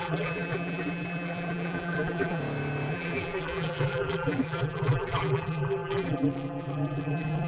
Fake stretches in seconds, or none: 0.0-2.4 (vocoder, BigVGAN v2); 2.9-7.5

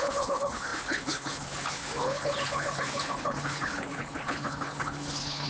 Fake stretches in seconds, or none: 0.0-5.5 (codec, HILCodec)

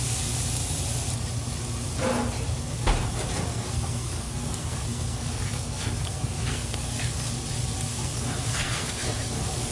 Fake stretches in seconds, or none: 3.5-7.3 (codec, SNAC); 7.9-9.7

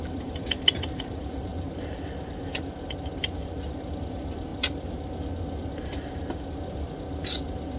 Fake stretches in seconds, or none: 0.0-1.5 (vocoder, BigVGAN v2); 4.1-4.5

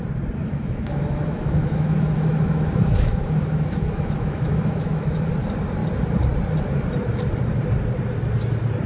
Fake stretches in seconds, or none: 0.4-5.3 (autoencoder, DAC-VAE)

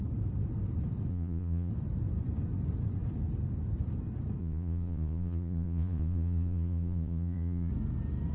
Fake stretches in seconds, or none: 1.1-1.7 (vocoder, Vocos); 4.4-7.7

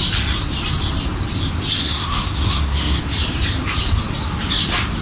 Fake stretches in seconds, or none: 1.8-3.0 (codec, SNAC)

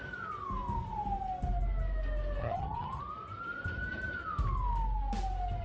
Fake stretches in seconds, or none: 2.4-3.0 (vocoder, HiFi-GAN)